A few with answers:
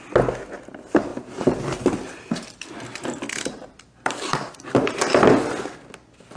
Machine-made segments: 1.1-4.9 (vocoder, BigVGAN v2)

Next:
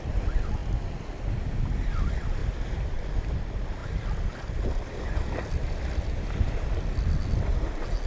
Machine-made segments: none

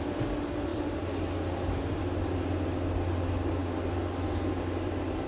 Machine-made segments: none

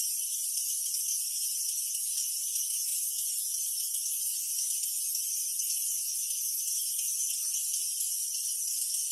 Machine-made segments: none

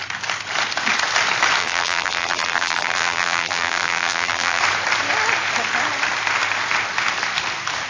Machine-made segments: 1.6-4.6 (vocoder, BigVGAN v2)

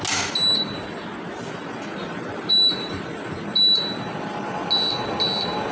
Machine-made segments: 2.0-3.3 (vocoder, BigVGAN v2)